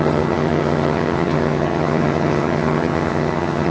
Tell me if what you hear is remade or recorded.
remade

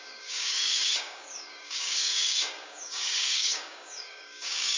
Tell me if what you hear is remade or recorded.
remade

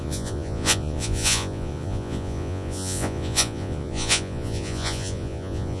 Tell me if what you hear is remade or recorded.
remade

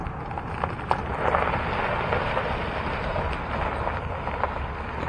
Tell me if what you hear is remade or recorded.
recorded